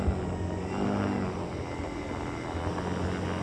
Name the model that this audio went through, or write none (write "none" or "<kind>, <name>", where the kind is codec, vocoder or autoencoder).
none